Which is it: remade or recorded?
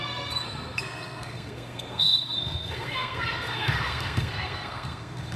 remade